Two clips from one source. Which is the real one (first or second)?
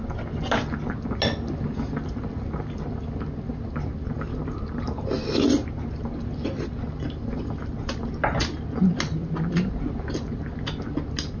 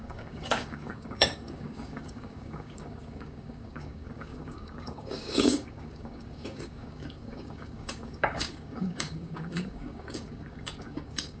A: first